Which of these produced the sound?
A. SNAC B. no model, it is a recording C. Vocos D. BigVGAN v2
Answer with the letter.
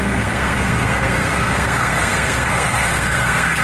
A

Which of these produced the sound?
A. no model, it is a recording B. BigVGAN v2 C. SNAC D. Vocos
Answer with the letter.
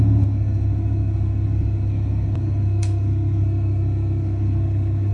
C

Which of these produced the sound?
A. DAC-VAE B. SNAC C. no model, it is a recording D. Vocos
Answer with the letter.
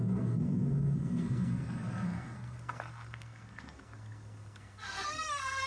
B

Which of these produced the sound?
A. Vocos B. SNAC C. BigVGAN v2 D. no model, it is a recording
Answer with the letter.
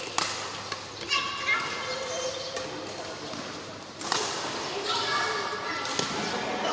D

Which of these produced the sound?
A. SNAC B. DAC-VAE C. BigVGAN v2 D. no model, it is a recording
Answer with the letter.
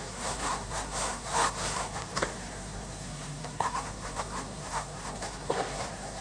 A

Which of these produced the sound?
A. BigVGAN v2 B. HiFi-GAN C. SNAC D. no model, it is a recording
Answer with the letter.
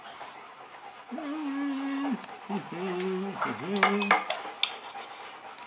D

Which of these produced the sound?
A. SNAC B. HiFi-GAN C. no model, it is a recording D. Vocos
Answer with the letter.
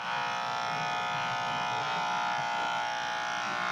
C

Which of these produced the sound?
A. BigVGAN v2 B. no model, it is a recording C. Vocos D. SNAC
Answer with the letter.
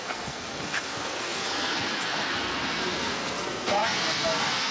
D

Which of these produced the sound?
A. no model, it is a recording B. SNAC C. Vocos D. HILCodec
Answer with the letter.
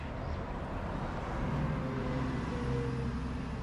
A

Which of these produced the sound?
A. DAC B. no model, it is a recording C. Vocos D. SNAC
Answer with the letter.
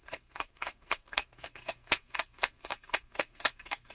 D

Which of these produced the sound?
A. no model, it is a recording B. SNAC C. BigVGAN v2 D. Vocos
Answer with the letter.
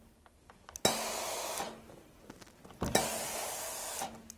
A